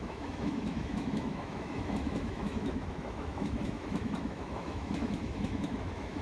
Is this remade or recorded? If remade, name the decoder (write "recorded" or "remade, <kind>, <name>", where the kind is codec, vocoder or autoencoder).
remade, autoencoder, DAC-VAE